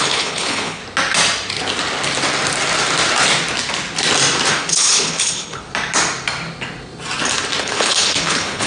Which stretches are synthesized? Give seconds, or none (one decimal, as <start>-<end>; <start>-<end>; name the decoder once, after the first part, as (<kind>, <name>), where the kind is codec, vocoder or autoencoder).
0.0-0.8 (codec, HILCodec); 4.5-5.7; 7.6-8.7